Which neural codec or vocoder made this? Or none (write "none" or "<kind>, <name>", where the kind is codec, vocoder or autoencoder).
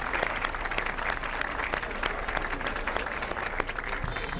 none